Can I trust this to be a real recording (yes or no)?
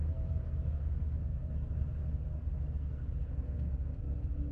no